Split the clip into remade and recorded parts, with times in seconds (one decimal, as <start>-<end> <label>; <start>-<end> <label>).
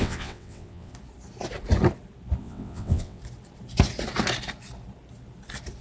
0.0-0.9 remade; 0.9-2.4 recorded; 2.4-3.2 remade; 3.2-5.8 recorded